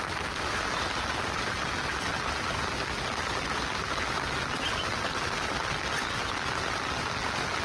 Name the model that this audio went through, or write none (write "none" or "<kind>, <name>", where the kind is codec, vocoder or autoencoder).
none